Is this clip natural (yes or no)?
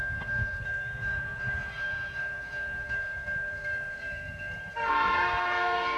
no